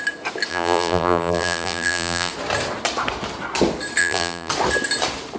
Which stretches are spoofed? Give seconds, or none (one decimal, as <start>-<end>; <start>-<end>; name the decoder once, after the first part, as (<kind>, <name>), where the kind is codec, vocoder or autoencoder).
0.5-2.3 (vocoder, BigVGAN v2); 4.0-4.5